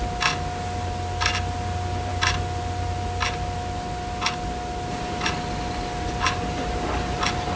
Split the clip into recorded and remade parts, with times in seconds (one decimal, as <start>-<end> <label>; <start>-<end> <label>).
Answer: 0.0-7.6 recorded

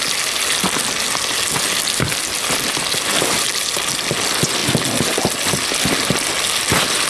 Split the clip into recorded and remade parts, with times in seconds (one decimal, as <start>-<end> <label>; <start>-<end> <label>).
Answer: 0.0-7.1 recorded

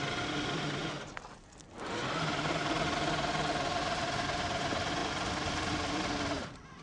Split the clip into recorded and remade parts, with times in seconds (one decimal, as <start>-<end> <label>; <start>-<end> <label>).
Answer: 0.0-6.8 recorded